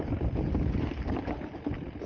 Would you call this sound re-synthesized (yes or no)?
no